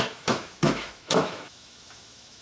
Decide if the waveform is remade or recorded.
remade